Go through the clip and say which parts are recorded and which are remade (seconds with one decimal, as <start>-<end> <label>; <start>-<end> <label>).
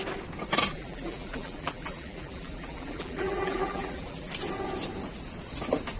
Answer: 0.0-0.7 recorded; 0.7-4.3 remade; 4.3-6.0 recorded